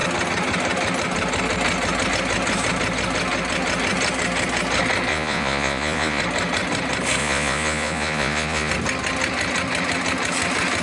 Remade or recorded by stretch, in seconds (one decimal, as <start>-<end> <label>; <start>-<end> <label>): 0.0-5.1 recorded; 5.1-6.2 remade; 6.2-7.2 recorded; 7.2-8.7 remade; 8.7-10.8 recorded

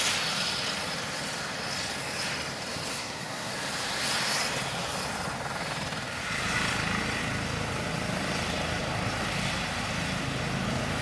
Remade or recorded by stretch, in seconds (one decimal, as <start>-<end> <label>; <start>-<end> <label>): 0.0-2.9 recorded; 2.9-3.5 remade; 3.5-11.0 recorded

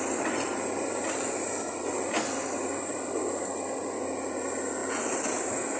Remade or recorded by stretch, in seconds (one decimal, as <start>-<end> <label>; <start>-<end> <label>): 0.0-5.8 recorded

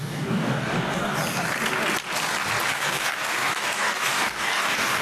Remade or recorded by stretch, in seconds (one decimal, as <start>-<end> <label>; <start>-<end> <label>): 0.0-1.2 remade; 1.2-2.7 recorded; 2.7-5.0 remade

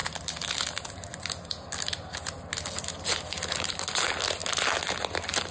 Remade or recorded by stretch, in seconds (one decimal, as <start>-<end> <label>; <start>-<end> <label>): 0.0-5.5 recorded

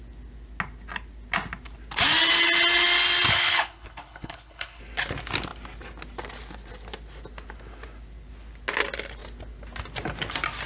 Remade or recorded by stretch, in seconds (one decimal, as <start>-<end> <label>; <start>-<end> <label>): 0.0-3.3 recorded; 3.3-4.8 remade; 4.8-10.7 recorded

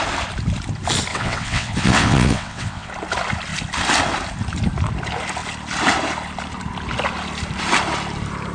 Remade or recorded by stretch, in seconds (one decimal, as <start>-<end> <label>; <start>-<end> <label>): 0.0-1.1 recorded; 1.1-2.9 remade; 2.9-8.5 recorded